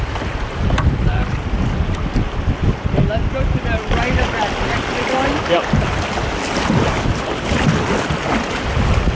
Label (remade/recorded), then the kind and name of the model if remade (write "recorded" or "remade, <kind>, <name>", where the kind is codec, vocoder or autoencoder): recorded